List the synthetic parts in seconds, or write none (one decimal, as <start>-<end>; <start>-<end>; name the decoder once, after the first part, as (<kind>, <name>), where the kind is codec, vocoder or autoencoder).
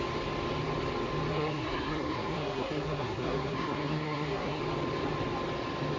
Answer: 1.3-4.6 (codec, SNAC)